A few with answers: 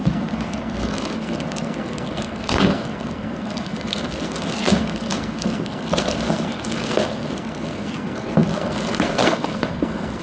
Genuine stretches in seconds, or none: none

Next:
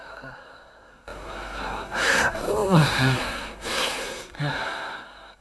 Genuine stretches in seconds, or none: none

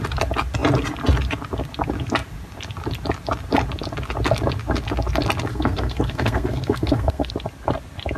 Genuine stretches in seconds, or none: 0.0-5.5; 7.3-8.2

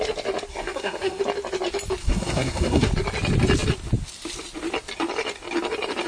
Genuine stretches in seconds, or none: 0.0-0.5; 1.2-2.0; 2.9-6.1

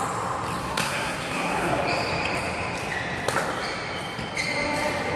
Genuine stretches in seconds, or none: 0.0-0.6; 1.8-5.2

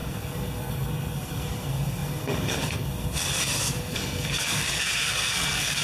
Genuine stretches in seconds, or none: none